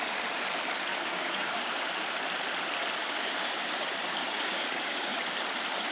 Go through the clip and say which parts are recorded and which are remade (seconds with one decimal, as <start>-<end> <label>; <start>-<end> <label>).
0.0-0.9 recorded; 0.9-1.6 remade; 1.6-3.0 recorded; 3.0-5.2 remade; 5.2-5.9 recorded